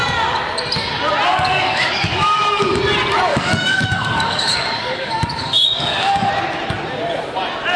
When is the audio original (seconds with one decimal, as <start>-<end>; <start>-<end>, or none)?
0.0-1.3; 2.8-3.3; 6.3-7.8